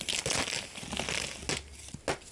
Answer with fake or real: real